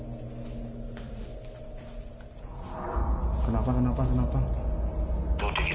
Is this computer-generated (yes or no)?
no